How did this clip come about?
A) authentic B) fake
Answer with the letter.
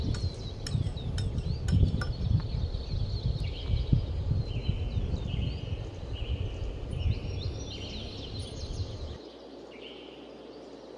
A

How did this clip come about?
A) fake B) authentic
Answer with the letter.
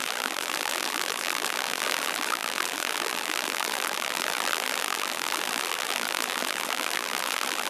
A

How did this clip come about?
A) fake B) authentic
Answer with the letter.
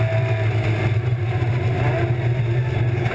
B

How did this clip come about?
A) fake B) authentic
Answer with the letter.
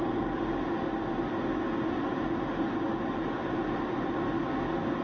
B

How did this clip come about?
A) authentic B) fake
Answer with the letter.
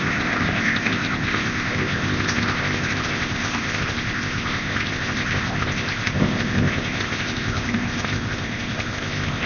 B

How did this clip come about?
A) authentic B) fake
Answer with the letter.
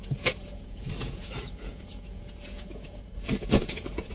B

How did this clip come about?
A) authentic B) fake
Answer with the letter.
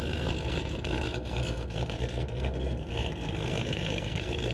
B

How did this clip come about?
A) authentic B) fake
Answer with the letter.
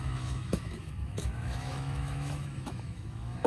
B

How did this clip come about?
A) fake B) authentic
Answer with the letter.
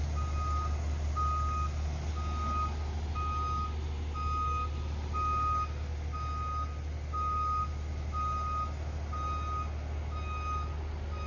B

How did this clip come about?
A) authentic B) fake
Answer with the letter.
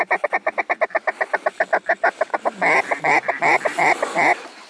A